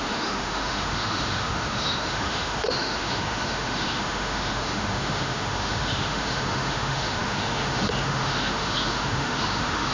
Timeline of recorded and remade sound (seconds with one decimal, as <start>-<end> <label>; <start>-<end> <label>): 0.0-9.9 remade

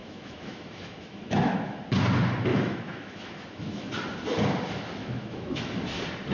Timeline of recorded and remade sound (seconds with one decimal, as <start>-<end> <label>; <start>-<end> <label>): 0.0-1.8 remade; 1.8-2.5 recorded; 2.5-3.9 remade; 3.9-5.0 recorded; 5.0-5.6 remade; 5.6-6.3 recorded

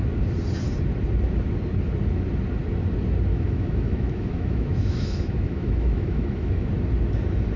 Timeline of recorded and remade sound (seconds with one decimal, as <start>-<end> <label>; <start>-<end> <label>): 0.0-3.3 recorded; 3.3-6.7 remade; 6.7-7.6 recorded

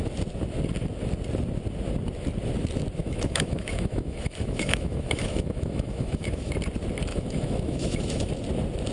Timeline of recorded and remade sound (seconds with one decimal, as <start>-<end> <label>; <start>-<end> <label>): 0.0-3.0 recorded; 3.0-6.5 remade; 6.5-7.1 recorded; 7.1-8.3 remade; 8.3-8.9 recorded

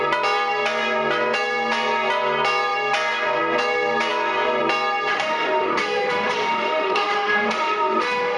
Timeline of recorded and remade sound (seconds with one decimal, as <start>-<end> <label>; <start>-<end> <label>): 0.0-5.1 recorded; 5.1-8.4 remade

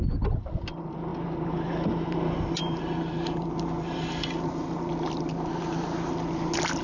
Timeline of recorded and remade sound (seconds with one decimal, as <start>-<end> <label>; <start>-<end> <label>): 0.0-6.8 recorded